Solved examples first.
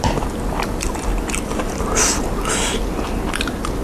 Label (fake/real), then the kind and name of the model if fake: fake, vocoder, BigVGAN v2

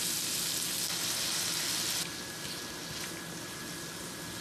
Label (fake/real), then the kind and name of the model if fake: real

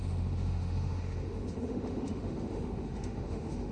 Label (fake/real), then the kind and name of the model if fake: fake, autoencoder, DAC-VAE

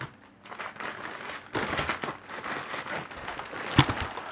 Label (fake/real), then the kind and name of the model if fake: real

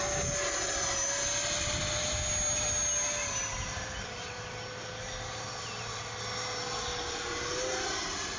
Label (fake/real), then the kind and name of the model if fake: real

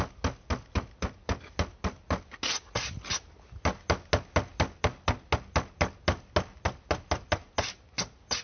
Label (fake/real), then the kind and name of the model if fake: real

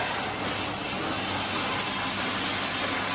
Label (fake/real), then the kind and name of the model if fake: real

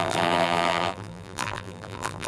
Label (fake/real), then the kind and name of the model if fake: fake, vocoder, BigVGAN v2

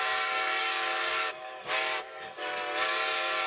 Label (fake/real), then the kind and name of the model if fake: fake, codec, DAC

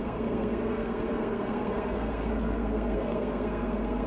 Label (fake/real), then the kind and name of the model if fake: fake, codec, SNAC